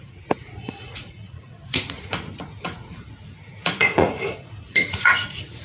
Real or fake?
fake